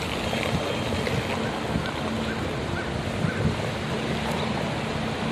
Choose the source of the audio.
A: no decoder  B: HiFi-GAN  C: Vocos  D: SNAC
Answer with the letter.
A